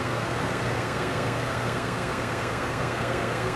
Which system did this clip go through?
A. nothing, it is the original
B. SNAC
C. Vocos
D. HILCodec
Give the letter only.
B